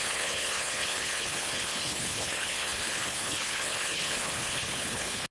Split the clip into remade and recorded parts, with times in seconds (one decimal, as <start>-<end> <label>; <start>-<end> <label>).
0.0-5.3 remade